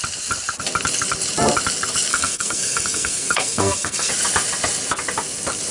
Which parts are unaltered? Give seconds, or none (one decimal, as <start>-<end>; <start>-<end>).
0.0-2.1; 4.1-5.7

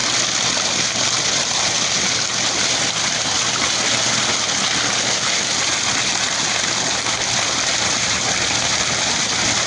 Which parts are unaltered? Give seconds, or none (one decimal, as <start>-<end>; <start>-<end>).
0.0-9.7

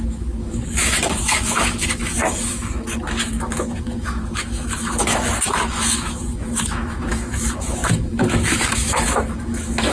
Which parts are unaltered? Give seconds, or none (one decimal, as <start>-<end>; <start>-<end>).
none

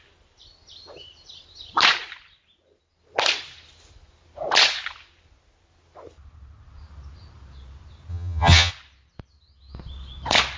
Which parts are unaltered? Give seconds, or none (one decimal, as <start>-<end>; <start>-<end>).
0.0-8.1; 8.7-10.6

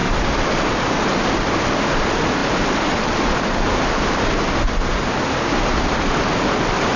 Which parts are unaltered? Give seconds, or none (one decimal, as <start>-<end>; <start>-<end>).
0.0-7.0

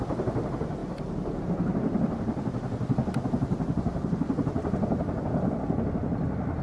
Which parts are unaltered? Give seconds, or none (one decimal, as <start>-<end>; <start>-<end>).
0.0-6.6

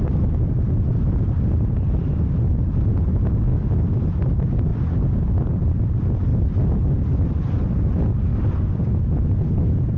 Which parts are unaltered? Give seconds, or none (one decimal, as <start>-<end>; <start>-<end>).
0.0-10.0